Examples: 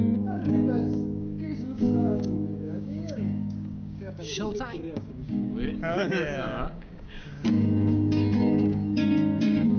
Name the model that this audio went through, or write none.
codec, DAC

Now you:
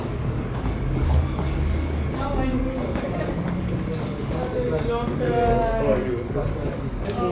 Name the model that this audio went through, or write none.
codec, DAC